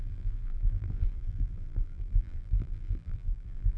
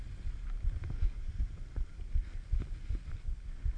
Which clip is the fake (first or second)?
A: first